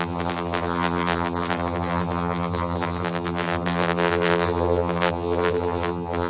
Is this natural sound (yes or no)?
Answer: no